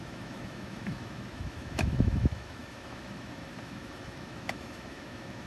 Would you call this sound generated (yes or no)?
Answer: yes